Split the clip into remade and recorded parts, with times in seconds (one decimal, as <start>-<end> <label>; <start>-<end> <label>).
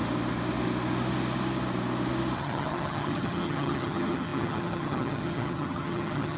0.0-2.4 recorded; 2.4-6.4 remade